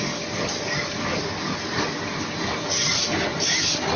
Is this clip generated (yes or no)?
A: no